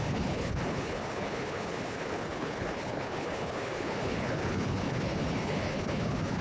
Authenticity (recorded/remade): remade